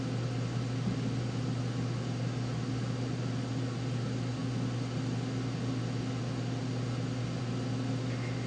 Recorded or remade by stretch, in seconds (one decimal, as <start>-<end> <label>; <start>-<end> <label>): 0.0-8.5 recorded